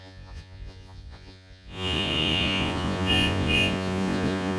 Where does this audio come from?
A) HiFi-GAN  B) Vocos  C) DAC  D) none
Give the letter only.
B